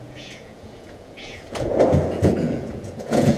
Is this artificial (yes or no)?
yes